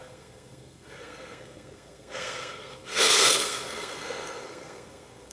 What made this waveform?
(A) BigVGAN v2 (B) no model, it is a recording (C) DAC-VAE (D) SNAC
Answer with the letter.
D